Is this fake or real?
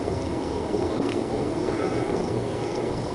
fake